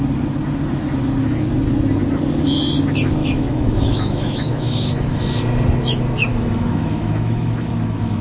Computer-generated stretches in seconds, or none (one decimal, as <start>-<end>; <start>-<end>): 3.2-5.2; 6.3-8.2